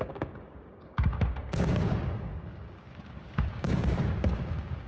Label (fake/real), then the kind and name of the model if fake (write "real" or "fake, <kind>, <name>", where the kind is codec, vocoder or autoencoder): fake, codec, DAC